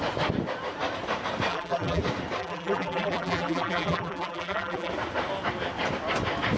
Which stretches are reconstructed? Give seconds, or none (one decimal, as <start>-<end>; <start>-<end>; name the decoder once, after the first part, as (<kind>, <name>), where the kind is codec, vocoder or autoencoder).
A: 1.5-2.0 (vocoder, BigVGAN v2); 2.4-4.9